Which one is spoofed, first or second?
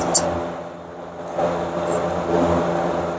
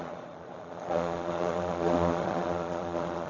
second